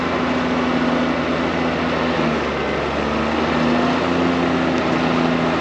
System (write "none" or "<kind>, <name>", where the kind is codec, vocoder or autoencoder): none